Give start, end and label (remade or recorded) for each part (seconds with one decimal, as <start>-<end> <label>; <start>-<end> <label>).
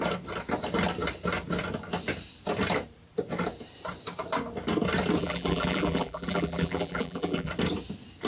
0.0-5.2 recorded; 5.2-7.5 remade; 7.5-8.3 recorded